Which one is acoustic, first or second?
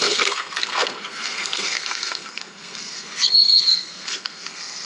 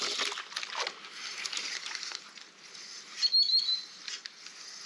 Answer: second